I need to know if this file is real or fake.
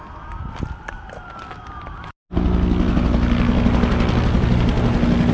real